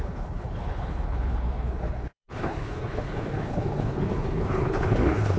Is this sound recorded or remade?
remade